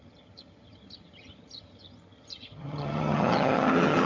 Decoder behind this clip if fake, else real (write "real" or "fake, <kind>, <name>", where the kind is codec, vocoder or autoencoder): fake, vocoder, HiFi-GAN